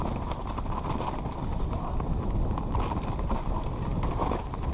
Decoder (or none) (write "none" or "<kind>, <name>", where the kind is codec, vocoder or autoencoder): vocoder, BigVGAN v2